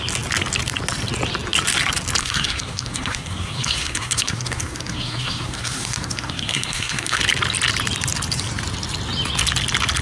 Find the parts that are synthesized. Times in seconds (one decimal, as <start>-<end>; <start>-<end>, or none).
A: 2.2-7.2